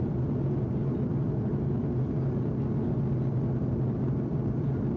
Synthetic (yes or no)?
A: no